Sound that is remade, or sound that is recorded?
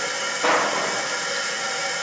recorded